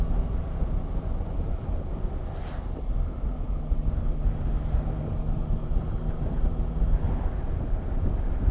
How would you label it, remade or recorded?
recorded